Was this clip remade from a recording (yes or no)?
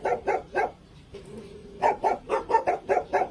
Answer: yes